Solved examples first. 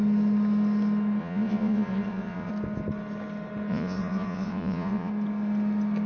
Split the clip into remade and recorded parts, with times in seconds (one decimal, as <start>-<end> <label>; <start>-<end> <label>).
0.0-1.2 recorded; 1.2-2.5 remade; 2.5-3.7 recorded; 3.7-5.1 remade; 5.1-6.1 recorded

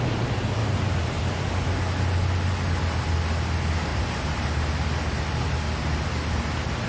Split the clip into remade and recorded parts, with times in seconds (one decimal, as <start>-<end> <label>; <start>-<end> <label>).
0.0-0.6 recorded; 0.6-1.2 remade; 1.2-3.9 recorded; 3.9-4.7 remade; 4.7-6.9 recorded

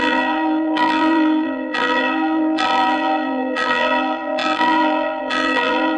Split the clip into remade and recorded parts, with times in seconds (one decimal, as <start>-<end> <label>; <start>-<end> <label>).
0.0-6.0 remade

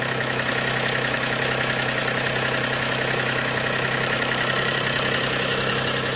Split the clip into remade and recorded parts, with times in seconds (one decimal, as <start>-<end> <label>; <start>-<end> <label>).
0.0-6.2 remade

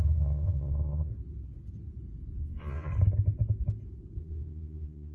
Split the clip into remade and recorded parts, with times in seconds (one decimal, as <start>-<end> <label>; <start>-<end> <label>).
0.0-1.1 remade; 1.1-2.4 recorded; 2.4-2.9 remade; 2.9-4.2 recorded; 4.2-5.1 remade